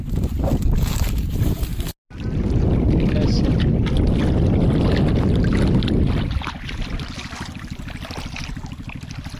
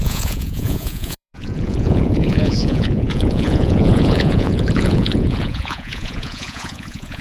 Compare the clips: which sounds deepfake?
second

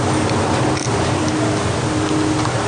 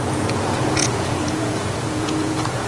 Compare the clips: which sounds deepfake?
second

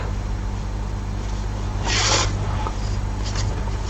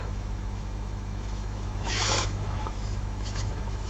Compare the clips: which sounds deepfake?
second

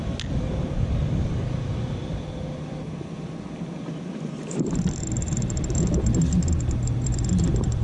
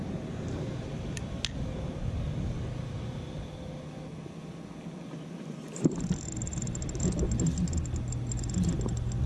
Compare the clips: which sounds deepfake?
first